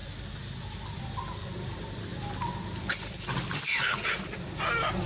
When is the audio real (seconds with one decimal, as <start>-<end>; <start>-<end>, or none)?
0.0-5.1